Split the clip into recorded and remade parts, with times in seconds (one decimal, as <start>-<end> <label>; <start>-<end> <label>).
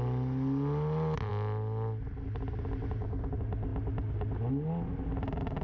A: 0.0-5.6 recorded